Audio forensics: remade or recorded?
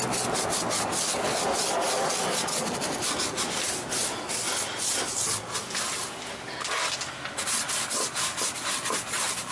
recorded